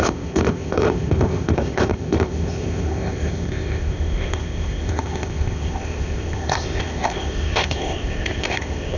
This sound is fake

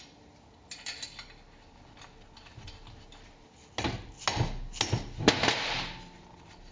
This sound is real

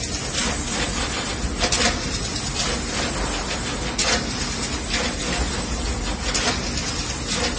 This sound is real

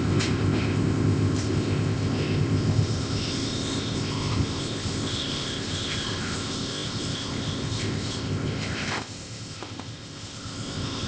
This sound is fake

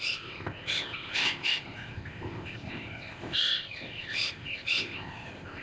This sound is fake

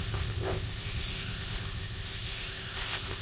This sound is fake